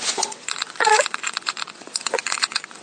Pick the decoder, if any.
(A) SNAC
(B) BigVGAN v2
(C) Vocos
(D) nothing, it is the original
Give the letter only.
C